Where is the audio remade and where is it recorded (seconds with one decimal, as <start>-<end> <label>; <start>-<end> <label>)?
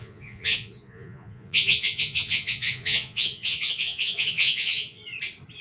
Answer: 0.0-5.0 remade; 5.0-5.6 recorded